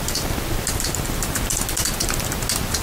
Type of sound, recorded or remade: recorded